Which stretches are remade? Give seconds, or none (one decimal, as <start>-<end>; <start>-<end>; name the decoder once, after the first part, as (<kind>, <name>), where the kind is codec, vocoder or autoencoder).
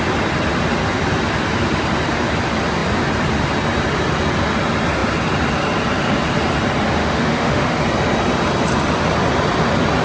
7.0-7.8 (autoencoder, DAC-VAE)